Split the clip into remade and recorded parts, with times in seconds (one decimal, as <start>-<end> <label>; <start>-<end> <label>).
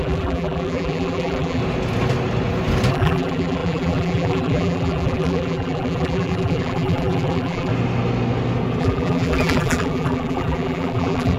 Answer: 0.0-1.6 remade; 1.6-2.9 recorded; 2.9-7.7 remade; 7.7-8.8 recorded; 8.8-11.4 remade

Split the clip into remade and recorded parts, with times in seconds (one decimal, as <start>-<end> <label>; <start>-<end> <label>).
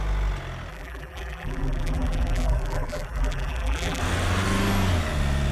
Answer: 0.0-0.7 recorded; 0.7-4.0 remade; 4.0-5.5 recorded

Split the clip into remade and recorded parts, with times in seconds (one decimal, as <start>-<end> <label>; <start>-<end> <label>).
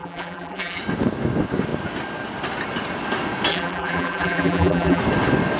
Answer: 0.0-0.8 remade; 0.8-3.5 recorded; 3.5-5.0 remade; 5.0-5.6 recorded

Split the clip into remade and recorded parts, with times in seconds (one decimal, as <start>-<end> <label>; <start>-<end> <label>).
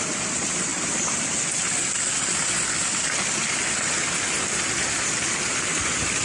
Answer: 0.0-0.7 remade; 0.7-4.4 recorded; 4.4-6.2 remade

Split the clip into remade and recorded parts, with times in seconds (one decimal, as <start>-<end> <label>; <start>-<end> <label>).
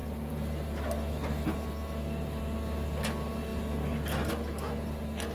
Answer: 0.0-5.3 recorded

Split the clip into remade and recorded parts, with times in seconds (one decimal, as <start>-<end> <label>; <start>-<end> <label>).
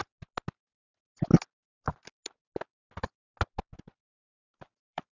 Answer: 0.0-4.2 recorded; 4.2-5.1 remade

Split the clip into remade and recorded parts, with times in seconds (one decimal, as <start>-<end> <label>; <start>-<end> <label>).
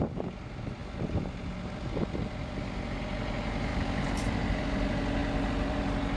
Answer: 0.0-3.7 recorded; 3.7-4.6 remade; 4.6-5.2 recorded; 5.2-5.8 remade; 5.8-6.2 recorded